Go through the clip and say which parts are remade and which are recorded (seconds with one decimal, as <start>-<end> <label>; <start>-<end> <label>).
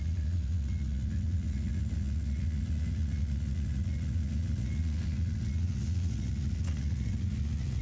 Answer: 0.0-7.8 remade